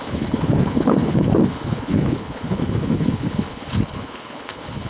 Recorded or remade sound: remade